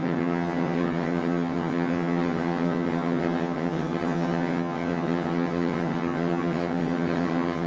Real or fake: fake